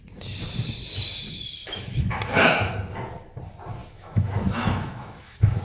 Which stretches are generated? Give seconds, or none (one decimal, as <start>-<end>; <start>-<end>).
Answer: 1.6-2.7; 3.8-5.6

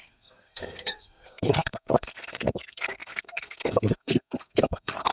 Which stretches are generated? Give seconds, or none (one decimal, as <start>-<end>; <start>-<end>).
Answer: 0.0-5.1

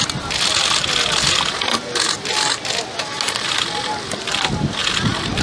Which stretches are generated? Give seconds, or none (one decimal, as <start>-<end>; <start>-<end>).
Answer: none

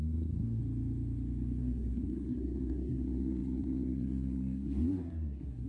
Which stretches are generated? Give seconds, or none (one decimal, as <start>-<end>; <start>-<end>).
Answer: 0.0-0.6; 1.6-5.7